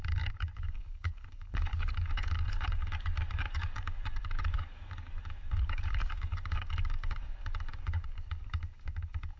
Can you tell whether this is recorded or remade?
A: remade